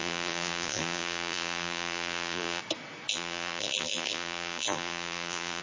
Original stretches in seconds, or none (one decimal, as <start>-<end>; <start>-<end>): 2.6-3.1